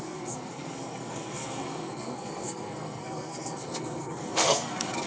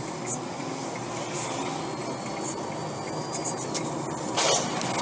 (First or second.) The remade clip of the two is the first